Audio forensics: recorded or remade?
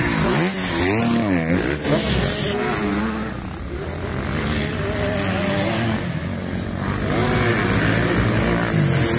recorded